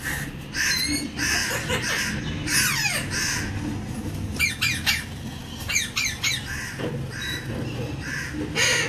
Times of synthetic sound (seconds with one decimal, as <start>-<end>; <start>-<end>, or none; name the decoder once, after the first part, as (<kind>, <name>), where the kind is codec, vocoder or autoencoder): none